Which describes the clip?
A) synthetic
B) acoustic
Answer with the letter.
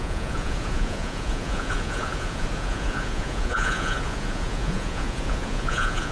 A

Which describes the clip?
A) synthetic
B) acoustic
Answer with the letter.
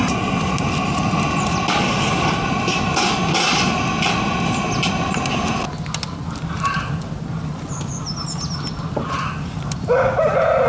B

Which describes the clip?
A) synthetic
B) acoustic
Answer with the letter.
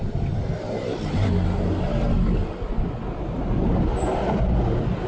B